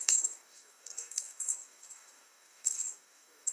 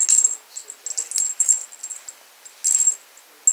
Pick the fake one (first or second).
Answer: first